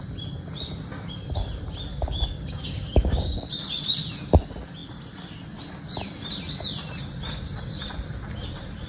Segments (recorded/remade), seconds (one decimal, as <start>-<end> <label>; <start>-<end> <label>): 0.0-1.9 recorded; 1.9-3.5 remade; 3.5-8.9 recorded